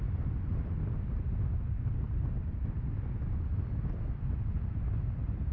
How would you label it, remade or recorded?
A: recorded